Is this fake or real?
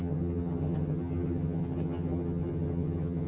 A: fake